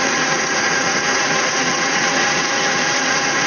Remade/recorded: remade